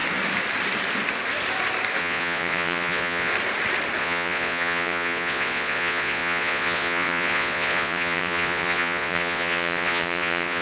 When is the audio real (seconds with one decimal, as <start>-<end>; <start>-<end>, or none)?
0.0-2.0; 3.3-4.0